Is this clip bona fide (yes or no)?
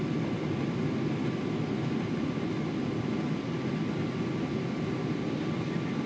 yes